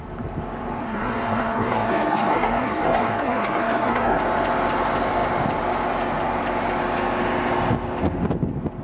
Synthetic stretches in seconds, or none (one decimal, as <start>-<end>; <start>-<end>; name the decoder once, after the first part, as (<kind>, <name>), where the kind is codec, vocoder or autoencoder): 0.8-4.2 (codec, SNAC)